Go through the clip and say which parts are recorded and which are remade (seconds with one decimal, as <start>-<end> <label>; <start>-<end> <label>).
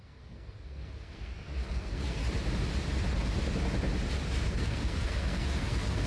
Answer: 0.0-2.2 remade; 2.2-4.5 recorded; 4.5-6.1 remade